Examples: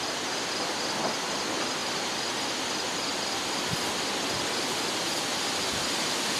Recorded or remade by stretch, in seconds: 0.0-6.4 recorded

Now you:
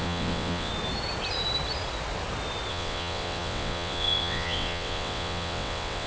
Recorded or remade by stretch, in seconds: 0.0-0.7 remade; 0.7-2.7 recorded; 2.7-6.1 remade

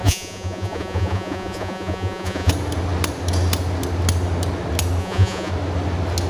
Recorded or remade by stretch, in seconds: 0.0-2.5 remade; 2.5-5.0 recorded; 5.0-5.5 remade; 5.5-6.3 recorded

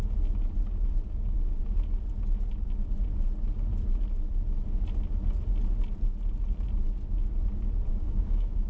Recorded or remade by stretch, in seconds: 0.0-7.9 recorded; 7.9-8.7 remade

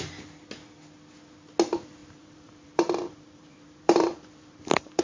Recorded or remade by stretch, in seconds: 0.0-2.0 recorded; 2.0-5.0 remade

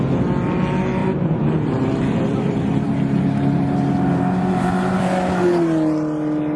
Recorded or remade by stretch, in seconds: 0.0-1.0 recorded; 1.0-5.0 remade; 5.0-6.6 recorded

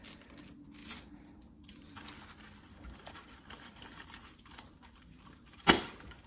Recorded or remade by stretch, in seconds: 0.0-0.8 recorded; 0.8-2.1 remade; 2.1-2.7 recorded; 2.7-6.3 remade

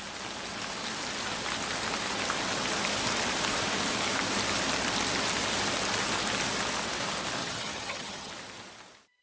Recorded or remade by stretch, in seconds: 0.0-7.4 recorded; 7.4-8.3 remade; 8.3-9.2 recorded